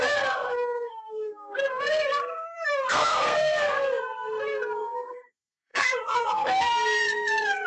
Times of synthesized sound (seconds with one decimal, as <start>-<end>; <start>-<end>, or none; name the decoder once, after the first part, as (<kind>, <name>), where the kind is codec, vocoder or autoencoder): 0.0-7.7 (codec, SNAC)